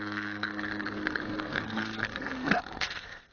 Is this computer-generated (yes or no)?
yes